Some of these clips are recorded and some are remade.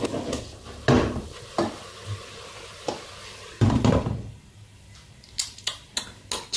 recorded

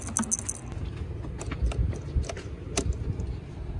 recorded